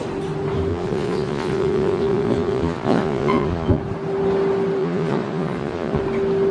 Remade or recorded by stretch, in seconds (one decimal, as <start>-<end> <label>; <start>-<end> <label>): 0.0-0.7 recorded; 0.7-3.8 remade; 3.8-4.8 recorded; 4.8-6.0 remade; 6.0-6.5 recorded